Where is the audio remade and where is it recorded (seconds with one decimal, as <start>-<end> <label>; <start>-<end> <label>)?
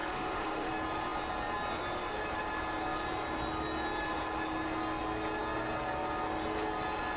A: 0.0-0.7 remade; 0.7-7.2 recorded